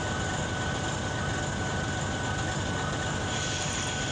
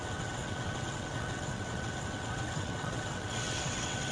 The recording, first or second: first